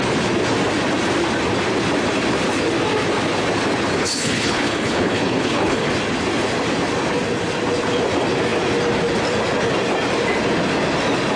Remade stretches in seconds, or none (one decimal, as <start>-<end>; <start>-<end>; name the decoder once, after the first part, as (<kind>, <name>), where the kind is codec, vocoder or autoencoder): 4.0-5.9 (codec, HILCodec)